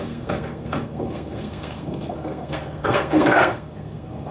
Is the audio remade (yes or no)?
yes